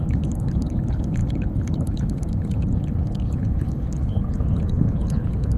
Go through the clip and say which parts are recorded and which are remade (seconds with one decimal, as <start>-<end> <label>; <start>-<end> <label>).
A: 0.0-5.6 remade